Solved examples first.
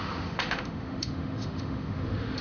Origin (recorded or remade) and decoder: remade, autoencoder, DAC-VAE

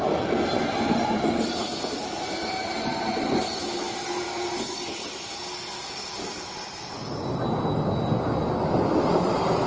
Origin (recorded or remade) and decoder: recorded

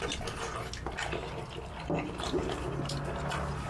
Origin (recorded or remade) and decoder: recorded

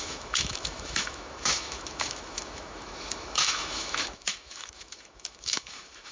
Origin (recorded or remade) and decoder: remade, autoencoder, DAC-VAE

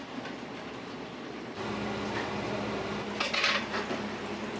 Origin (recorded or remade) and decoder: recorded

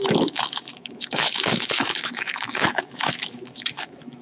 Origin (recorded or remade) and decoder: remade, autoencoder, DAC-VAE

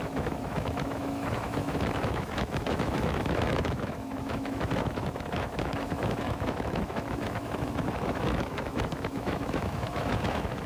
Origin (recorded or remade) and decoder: remade, autoencoder, DAC-VAE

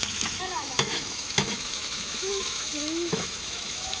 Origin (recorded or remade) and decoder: remade, autoencoder, DAC-VAE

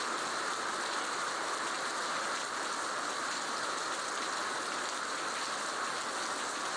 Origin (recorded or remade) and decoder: recorded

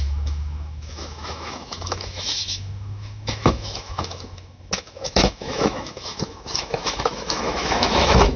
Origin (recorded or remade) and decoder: remade, autoencoder, DAC-VAE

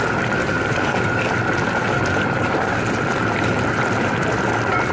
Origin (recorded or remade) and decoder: recorded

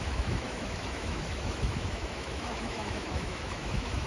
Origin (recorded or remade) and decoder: remade, autoencoder, DAC-VAE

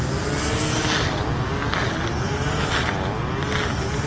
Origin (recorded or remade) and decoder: recorded